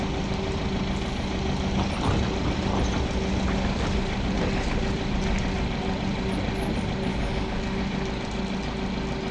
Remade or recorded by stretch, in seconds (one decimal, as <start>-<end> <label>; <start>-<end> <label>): 0.0-7.1 recorded; 7.1-7.8 remade; 7.8-9.3 recorded